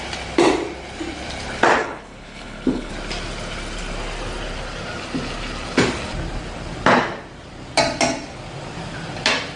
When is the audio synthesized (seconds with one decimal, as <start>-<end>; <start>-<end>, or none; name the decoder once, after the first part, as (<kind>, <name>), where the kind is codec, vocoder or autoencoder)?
1.8-2.9 (codec, HILCodec)